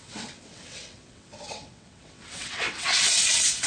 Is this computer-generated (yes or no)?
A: yes